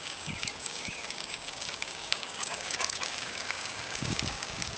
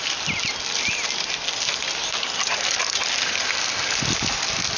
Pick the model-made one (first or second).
first